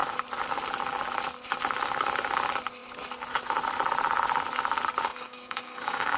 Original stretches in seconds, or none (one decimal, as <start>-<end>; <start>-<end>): 0.0-5.1